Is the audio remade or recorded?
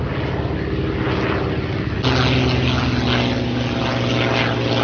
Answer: recorded